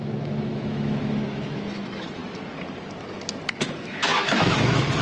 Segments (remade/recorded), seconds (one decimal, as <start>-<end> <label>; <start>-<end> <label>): 0.0-2.2 remade; 2.2-3.6 recorded; 3.6-5.0 remade